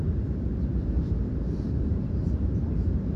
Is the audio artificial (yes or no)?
yes